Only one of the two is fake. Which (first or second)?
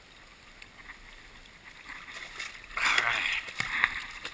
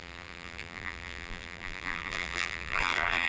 second